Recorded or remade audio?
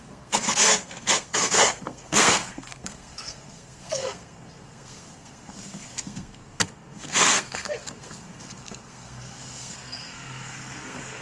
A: remade